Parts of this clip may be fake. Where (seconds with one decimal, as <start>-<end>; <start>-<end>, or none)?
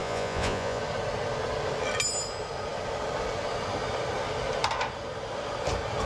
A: 0.0-0.8